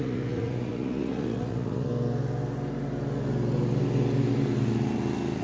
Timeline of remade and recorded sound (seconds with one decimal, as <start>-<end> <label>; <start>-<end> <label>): 0.0-1.9 remade; 1.9-5.4 recorded